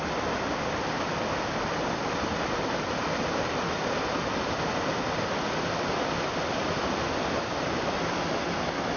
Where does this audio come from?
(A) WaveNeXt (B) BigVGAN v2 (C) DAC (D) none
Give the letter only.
D